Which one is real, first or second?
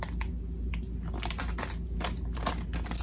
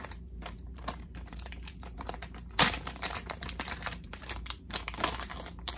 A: first